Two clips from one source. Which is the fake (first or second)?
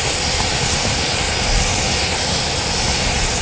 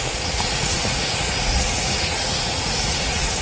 second